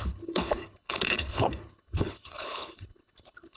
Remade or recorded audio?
remade